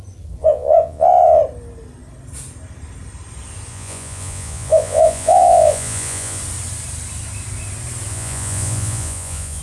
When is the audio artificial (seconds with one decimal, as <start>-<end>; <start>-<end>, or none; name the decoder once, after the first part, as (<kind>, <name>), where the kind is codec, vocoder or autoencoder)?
0.4-1.4 (vocoder, Vocos); 3.7-6.4; 8.1-9.6